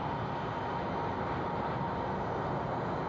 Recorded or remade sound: recorded